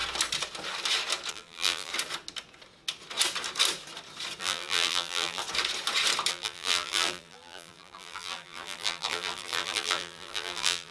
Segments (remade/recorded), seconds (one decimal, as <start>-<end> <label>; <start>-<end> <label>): 0.0-1.3 recorded; 1.3-1.9 remade; 1.9-4.4 recorded; 4.4-5.4 remade; 5.4-6.3 recorded; 6.3-10.9 remade